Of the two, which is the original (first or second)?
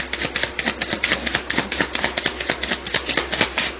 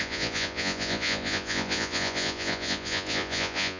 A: first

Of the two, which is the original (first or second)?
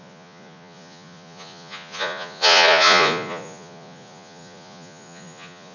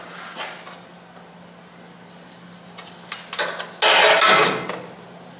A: second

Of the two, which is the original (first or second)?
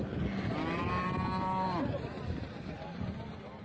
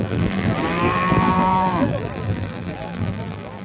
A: first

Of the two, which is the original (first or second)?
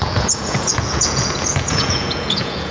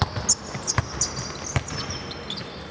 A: second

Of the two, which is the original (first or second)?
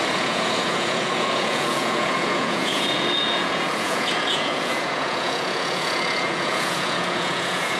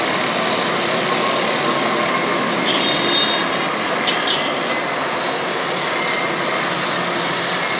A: second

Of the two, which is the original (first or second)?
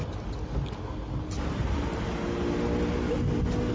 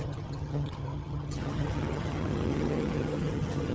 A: first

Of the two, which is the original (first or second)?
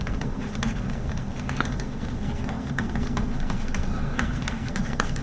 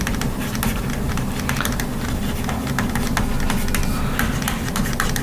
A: second